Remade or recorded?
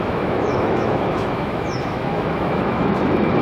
remade